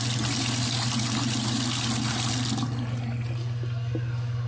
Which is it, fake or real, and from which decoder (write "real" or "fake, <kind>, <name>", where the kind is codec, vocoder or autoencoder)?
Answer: real